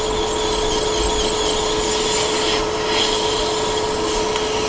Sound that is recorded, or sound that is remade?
recorded